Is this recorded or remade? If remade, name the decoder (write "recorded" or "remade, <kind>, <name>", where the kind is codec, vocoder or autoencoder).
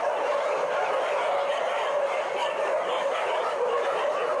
recorded